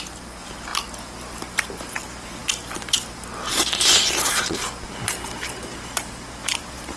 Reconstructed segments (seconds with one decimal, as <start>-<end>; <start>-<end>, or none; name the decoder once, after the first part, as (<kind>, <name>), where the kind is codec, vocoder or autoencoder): none